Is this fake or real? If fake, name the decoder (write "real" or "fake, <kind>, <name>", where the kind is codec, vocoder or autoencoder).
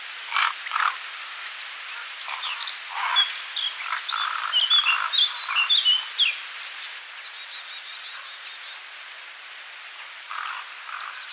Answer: real